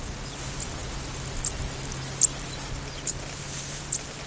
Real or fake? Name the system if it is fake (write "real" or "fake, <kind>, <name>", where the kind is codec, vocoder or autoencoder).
fake, vocoder, BigVGAN v2